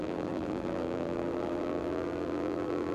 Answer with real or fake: fake